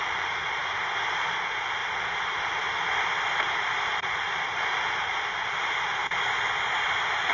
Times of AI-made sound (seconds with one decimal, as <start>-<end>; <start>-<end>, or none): 0.0-0.6; 1.1-1.8; 3.9-6.0